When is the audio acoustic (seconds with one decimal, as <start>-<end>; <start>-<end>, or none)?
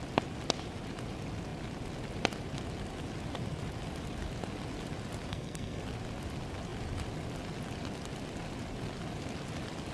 0.0-5.3; 5.8-9.9